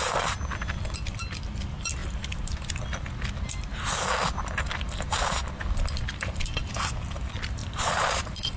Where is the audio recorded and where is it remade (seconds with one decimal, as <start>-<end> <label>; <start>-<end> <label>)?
0.0-2.0 recorded; 2.0-2.7 remade; 2.7-7.6 recorded; 7.6-8.2 remade; 8.2-8.6 recorded